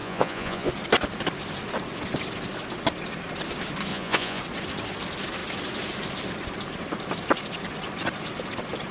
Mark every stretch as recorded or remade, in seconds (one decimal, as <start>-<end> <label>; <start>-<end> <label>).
0.0-0.7 remade; 0.7-3.9 recorded; 3.9-4.4 remade; 4.4-8.9 recorded